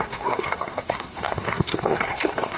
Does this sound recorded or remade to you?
remade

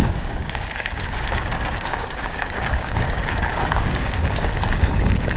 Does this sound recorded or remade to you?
remade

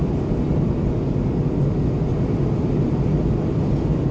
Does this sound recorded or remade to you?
recorded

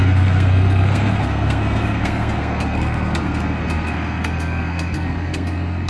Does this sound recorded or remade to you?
remade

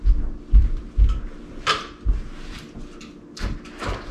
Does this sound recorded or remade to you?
recorded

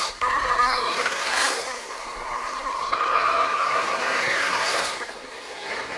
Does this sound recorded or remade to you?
remade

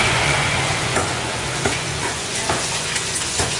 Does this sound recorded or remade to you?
remade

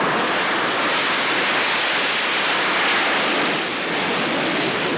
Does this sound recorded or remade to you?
recorded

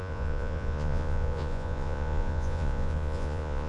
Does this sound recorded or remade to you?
remade